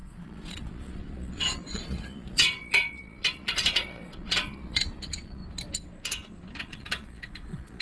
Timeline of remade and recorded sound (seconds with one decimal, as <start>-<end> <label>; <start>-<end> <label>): 0.0-5.4 remade; 5.4-6.6 recorded; 6.6-7.8 remade